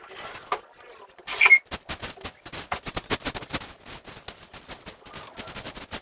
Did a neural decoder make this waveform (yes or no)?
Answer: no